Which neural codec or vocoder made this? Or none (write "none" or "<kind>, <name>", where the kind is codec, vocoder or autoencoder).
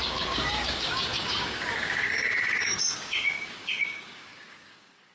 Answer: codec, DAC